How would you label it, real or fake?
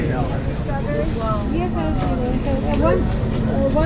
real